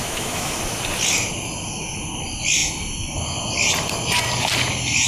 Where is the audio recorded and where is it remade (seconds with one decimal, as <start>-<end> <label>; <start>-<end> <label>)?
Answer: 0.0-0.6 remade; 0.6-5.1 recorded